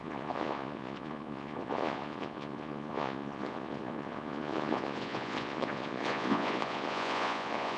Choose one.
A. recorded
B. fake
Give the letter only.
B